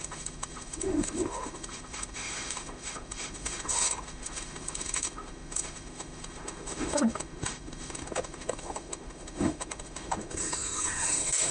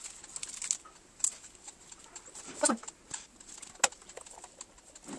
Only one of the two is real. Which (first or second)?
second